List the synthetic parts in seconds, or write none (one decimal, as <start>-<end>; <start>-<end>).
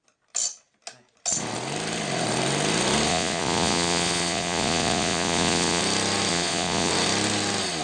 3.1-5.8; 6.3-6.9